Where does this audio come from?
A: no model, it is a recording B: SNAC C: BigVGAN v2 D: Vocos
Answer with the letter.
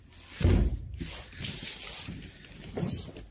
A